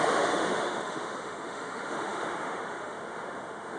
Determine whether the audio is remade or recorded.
remade